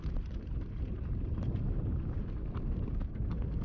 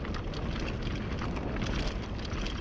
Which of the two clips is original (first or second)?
second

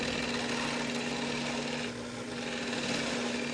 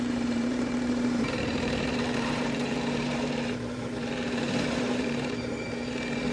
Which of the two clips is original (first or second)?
first